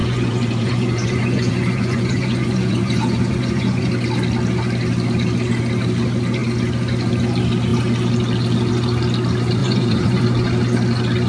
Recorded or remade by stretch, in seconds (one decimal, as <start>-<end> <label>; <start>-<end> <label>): 0.0-3.9 remade; 3.9-9.6 recorded; 9.6-10.2 remade; 10.2-11.3 recorded